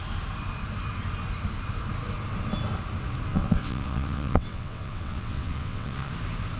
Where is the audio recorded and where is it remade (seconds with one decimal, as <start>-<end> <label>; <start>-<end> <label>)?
0.0-3.3 recorded; 3.3-6.1 remade; 6.1-6.6 recorded